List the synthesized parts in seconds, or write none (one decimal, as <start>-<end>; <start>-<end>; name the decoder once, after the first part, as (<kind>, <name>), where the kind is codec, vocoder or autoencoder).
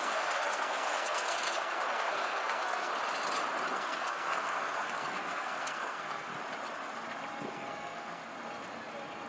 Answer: 0.0-2.9 (codec, SNAC); 3.7-6.3; 7.5-8.2